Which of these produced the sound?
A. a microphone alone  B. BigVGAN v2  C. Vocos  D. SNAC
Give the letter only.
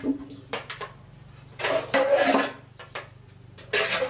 A